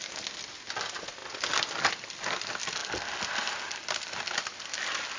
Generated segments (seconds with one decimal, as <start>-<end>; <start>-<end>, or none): none